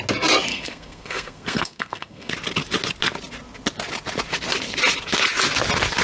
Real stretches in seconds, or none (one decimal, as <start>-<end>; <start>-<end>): 0.0-0.5; 2.3-6.0